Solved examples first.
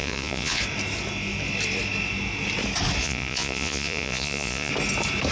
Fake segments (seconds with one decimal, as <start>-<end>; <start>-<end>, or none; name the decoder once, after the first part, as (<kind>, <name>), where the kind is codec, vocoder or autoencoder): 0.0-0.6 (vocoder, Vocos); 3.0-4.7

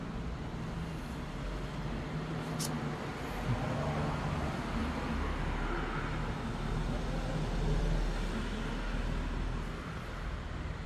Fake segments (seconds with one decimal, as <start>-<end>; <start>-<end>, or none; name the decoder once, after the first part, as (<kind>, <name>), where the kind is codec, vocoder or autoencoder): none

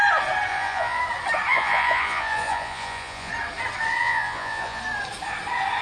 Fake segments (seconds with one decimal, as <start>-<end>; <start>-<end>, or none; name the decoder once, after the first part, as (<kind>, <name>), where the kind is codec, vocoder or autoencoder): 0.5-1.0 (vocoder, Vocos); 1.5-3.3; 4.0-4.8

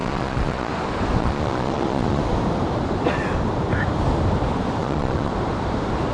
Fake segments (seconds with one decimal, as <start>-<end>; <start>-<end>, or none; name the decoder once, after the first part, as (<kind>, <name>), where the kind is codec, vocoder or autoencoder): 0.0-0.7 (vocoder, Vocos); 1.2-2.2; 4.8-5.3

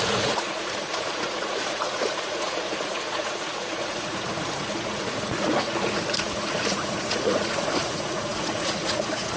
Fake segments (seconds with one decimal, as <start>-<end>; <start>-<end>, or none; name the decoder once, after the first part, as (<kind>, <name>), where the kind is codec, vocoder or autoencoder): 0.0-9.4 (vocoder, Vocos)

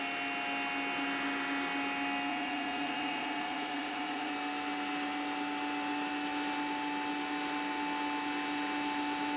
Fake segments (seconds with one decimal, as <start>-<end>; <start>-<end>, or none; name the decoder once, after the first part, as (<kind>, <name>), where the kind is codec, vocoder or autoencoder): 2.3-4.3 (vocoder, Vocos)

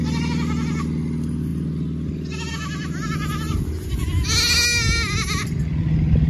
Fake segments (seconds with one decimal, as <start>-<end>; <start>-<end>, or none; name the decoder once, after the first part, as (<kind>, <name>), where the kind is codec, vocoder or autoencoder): none